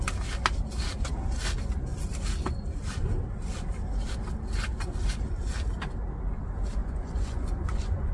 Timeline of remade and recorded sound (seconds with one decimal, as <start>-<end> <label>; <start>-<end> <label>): 0.0-6.8 recorded; 6.8-8.1 remade